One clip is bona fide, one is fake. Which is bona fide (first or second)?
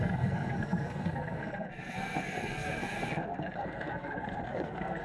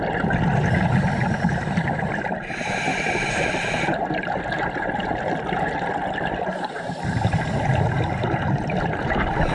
second